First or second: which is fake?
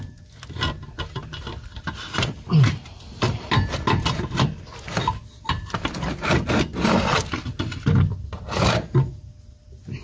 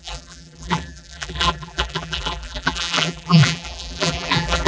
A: second